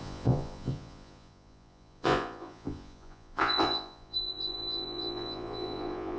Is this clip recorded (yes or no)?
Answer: no